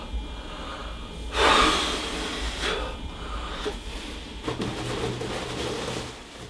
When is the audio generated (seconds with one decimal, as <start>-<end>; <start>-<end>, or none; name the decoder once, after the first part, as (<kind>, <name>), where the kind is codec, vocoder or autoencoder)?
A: none